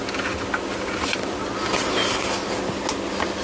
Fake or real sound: real